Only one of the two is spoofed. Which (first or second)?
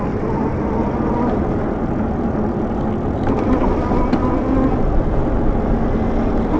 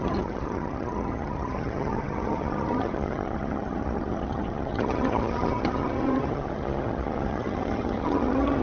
second